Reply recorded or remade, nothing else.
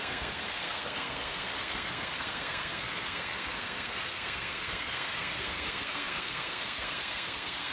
remade